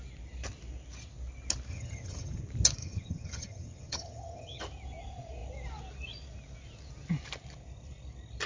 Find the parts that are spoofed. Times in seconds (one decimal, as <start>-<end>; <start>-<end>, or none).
1.7-2.4; 2.8-4.6